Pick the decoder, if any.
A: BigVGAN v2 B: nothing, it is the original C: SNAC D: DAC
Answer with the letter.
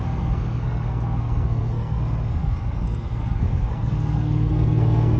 C